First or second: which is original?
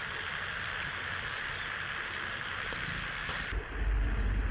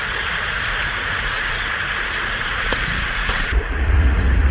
first